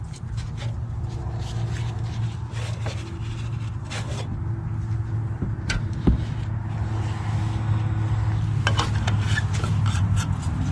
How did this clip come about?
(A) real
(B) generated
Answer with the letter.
A